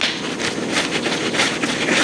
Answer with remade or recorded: recorded